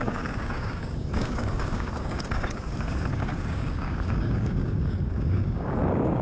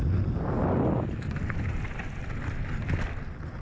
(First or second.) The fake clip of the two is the first